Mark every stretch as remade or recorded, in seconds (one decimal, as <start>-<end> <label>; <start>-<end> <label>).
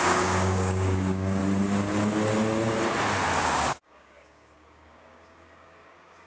0.0-1.4 remade; 1.4-3.4 recorded; 3.4-6.3 remade